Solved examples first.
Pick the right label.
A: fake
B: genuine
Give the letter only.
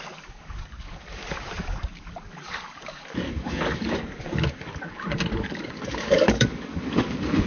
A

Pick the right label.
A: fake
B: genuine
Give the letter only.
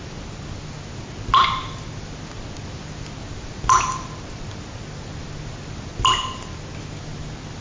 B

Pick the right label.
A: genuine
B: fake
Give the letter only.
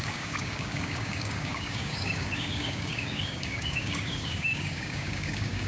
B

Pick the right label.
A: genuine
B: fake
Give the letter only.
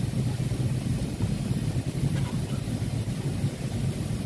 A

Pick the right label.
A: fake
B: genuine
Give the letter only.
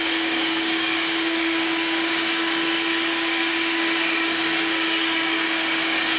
A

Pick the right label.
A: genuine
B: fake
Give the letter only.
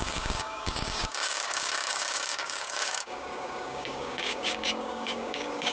B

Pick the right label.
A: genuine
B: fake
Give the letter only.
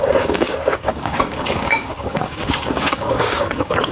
B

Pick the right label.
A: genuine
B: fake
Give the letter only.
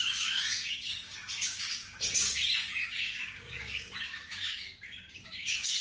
B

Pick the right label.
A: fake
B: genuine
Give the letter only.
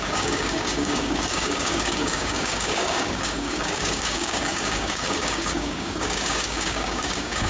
A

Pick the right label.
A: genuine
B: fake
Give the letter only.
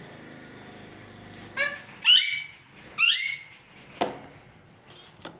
A